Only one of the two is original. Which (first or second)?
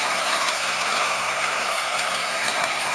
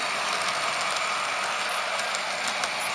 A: second